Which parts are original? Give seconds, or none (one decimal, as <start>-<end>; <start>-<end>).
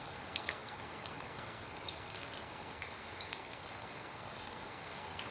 none